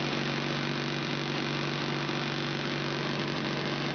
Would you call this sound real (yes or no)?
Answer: yes